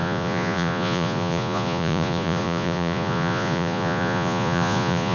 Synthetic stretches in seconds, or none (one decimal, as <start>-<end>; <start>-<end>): 0.0-5.1